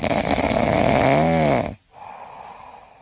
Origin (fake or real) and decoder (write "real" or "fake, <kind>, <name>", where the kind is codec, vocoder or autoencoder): real